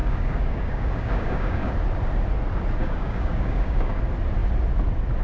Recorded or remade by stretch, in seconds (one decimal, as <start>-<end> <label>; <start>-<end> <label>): 0.0-1.7 remade; 1.7-2.8 recorded; 2.8-4.0 remade; 4.0-5.2 recorded